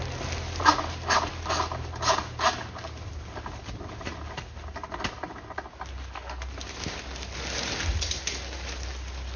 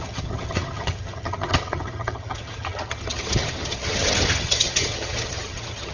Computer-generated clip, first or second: second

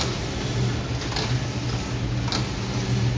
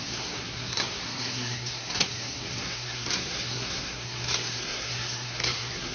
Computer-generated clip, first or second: second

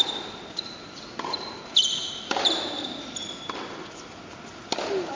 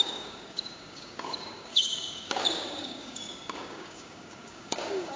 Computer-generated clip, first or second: second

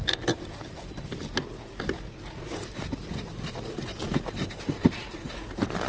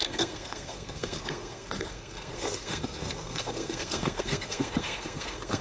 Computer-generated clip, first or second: second